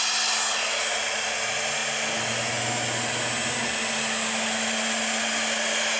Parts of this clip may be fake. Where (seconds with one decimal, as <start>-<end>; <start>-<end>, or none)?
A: none